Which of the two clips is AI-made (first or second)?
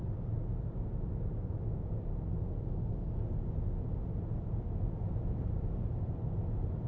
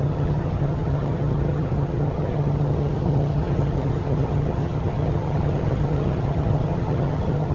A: second